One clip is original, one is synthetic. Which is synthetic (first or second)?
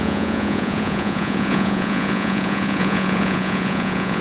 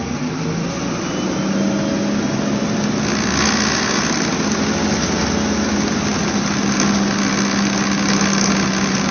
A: first